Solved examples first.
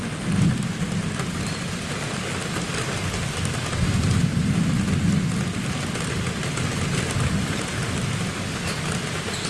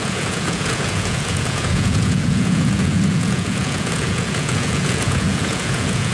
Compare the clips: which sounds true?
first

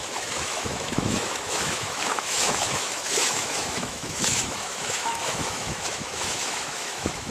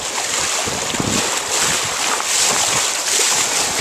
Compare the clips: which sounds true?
second